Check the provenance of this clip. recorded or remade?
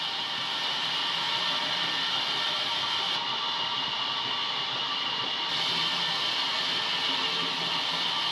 recorded